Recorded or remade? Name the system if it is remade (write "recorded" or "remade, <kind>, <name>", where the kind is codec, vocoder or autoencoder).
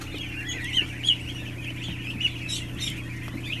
recorded